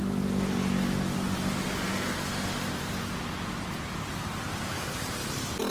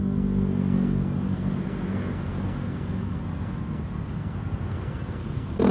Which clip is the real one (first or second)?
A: first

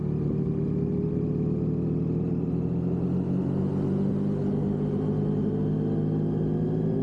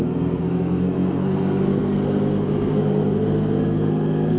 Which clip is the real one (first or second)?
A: first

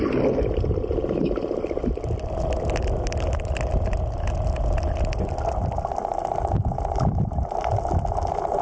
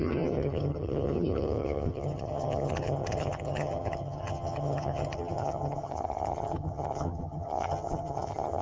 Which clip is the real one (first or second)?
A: first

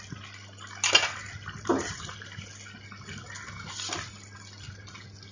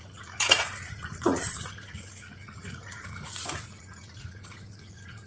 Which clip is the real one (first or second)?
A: first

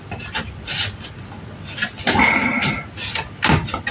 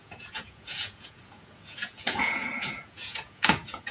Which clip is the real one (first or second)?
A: first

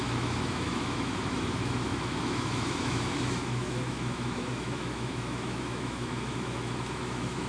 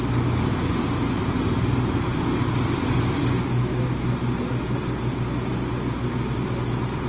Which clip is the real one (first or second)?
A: second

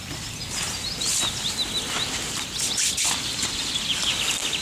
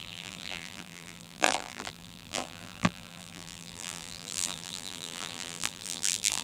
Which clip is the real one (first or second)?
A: first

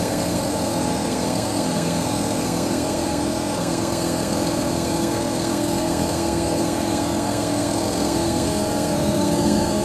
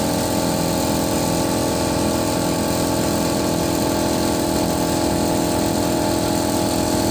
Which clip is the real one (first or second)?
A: second